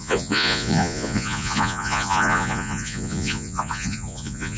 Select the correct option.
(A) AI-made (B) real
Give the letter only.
A